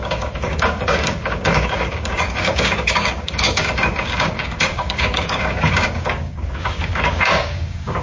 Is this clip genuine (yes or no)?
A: no